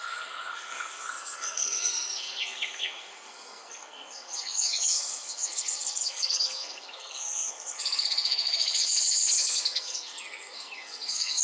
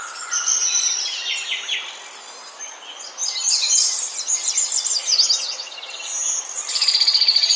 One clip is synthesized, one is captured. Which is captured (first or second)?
second